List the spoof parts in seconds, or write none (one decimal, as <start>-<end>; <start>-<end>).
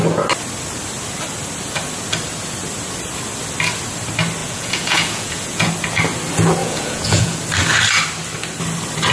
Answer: 4.4-5.7; 6.6-7.4